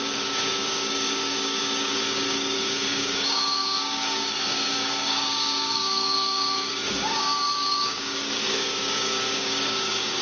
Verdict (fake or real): fake